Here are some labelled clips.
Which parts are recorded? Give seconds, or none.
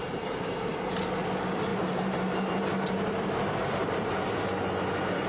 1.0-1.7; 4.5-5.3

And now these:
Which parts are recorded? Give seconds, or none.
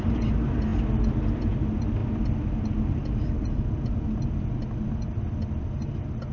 0.0-6.3